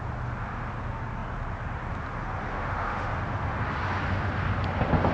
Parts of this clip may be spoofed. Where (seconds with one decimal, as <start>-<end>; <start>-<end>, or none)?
2.5-3.1